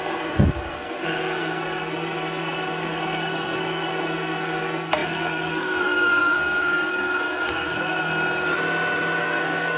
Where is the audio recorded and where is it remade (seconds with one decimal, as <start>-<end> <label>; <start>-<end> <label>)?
0.0-8.1 remade; 8.1-9.2 recorded; 9.2-9.8 remade